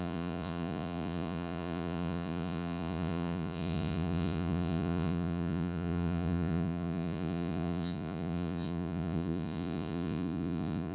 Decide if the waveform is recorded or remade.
remade